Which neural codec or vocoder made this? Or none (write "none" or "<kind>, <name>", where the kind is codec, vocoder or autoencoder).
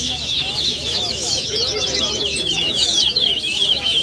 autoencoder, DAC-VAE